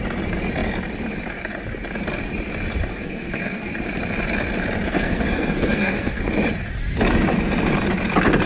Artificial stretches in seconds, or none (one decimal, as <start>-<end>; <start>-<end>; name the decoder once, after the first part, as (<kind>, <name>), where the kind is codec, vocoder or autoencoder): 2.9-3.7 (codec, SNAC); 4.9-6.2